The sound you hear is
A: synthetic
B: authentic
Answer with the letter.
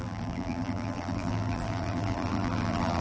A